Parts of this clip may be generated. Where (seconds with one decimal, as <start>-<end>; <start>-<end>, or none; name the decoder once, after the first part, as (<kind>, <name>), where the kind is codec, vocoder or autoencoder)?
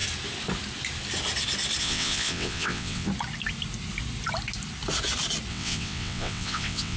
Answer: 1.8-3.1 (vocoder, WaveNeXt); 5.5-7.0